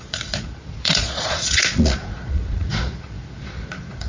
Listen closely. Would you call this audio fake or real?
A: fake